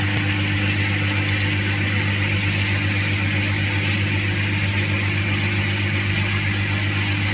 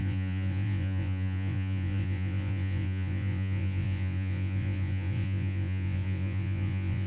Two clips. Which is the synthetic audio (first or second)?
second